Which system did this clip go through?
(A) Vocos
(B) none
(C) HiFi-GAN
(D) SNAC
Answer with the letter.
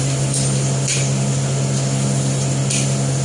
B